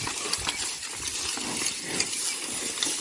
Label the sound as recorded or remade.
recorded